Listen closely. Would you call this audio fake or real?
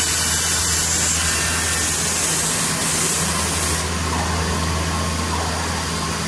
real